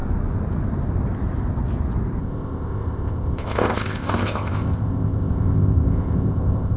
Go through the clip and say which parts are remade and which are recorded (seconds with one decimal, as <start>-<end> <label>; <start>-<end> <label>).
0.0-2.2 recorded; 2.2-6.8 remade

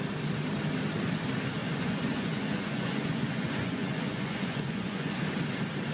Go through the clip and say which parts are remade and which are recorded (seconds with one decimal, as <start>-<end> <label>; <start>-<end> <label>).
0.0-1.6 recorded; 1.6-5.1 remade; 5.1-5.9 recorded